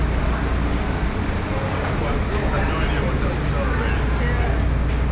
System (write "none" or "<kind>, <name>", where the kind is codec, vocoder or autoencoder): none